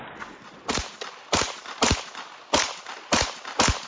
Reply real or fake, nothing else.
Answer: real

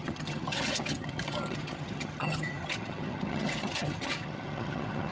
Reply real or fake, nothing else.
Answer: fake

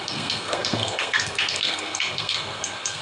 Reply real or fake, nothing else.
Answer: fake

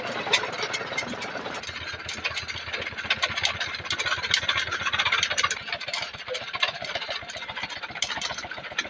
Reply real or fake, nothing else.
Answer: real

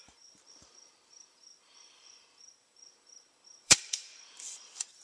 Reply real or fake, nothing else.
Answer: fake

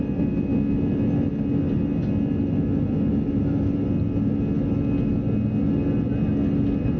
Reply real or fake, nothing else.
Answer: real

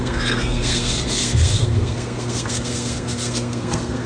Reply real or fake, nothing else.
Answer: fake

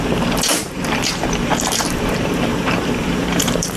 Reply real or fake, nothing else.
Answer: fake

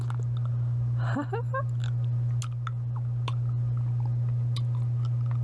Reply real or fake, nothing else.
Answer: real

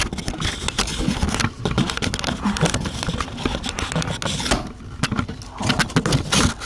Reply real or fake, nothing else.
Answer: real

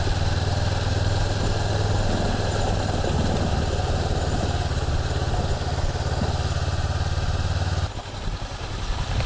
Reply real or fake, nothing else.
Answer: real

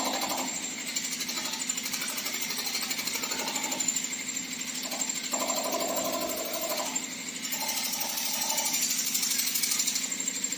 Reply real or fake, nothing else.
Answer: real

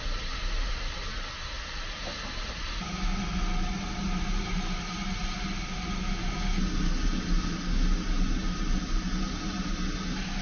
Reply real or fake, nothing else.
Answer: real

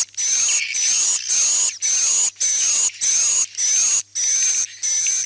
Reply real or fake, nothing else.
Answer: real